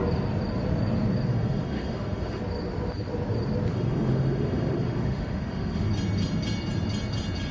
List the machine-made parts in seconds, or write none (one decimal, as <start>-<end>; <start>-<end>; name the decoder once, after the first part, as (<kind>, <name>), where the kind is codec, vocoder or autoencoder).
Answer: 1.3-2.4 (autoencoder, DAC-VAE); 3.7-5.9